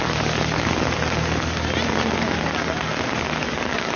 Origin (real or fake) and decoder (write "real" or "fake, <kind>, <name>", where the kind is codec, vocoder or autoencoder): real